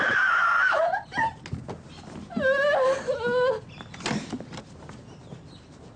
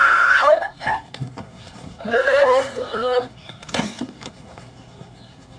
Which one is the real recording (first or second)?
first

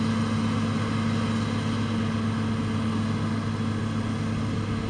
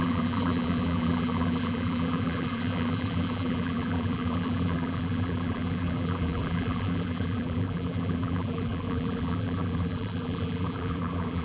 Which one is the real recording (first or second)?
first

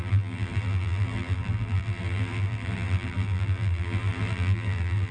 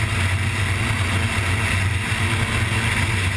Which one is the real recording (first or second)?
second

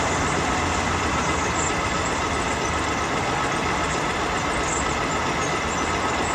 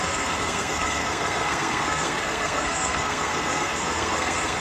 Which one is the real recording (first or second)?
first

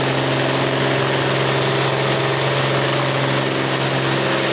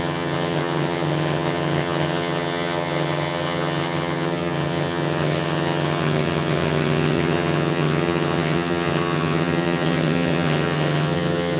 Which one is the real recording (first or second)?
first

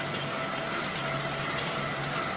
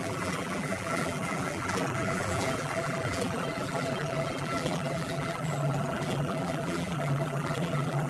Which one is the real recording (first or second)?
first